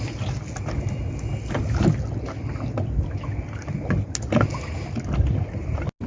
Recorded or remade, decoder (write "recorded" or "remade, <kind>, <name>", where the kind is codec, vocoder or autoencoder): recorded